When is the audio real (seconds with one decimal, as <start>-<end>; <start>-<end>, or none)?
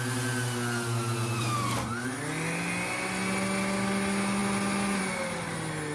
0.0-5.9